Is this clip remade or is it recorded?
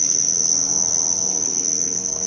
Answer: remade